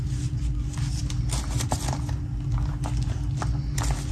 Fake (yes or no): no